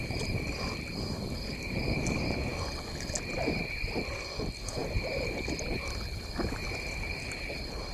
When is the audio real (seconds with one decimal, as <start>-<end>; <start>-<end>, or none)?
2.5-3.3